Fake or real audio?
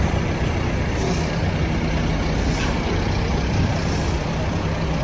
real